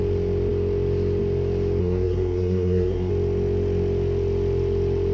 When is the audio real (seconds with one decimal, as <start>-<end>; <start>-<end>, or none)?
0.0-1.8; 3.1-5.1